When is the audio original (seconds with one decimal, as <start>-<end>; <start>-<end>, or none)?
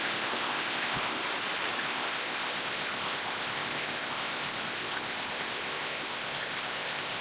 1.2-1.8